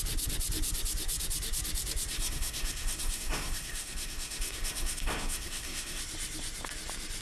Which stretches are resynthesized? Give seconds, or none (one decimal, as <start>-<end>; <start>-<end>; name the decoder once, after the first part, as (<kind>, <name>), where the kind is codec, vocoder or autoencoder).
2.1-6.0 (codec, SNAC)